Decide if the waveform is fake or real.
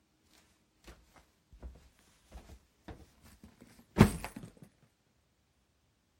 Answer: real